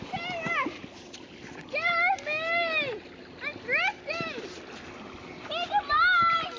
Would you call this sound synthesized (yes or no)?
no